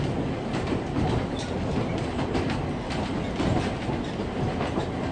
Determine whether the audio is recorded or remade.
recorded